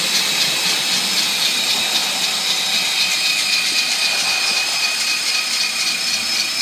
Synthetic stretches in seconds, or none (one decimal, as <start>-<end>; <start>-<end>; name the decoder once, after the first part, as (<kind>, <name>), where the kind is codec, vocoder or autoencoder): 4.5-5.3 (vocoder, BigVGAN v2)